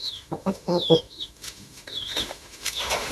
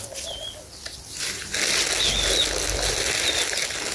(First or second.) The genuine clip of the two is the second